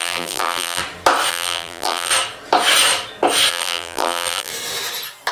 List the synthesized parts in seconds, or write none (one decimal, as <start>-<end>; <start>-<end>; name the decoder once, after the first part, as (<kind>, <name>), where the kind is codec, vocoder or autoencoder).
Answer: 0.0-0.8 (vocoder, BigVGAN v2); 1.3-2.1; 3.5-4.5